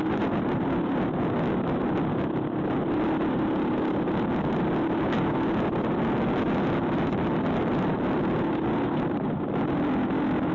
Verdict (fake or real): real